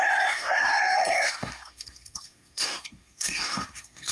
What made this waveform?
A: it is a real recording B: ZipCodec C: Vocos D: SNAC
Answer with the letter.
D